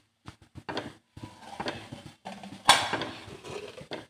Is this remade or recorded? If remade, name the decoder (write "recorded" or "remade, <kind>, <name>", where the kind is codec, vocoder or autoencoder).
recorded